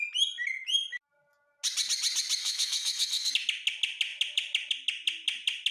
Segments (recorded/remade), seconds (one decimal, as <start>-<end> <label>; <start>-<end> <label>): 0.0-2.4 recorded; 2.4-3.3 remade; 3.3-5.7 recorded